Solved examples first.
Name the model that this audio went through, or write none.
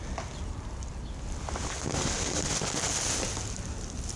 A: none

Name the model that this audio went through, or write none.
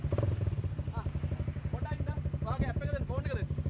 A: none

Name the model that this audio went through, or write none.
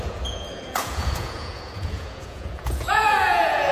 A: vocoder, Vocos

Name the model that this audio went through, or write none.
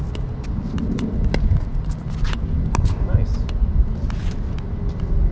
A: none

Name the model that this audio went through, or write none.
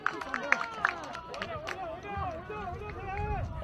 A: none